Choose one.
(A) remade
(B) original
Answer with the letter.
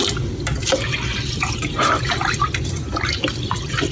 B